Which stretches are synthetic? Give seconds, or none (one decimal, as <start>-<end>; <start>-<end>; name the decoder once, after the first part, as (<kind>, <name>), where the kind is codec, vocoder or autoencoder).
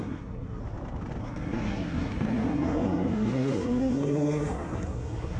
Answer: 0.0-0.6 (codec, SNAC); 1.2-5.4